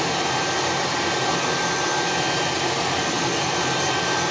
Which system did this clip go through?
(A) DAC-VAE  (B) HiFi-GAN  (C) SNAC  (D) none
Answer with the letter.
D